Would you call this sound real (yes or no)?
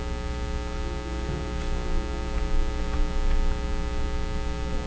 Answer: yes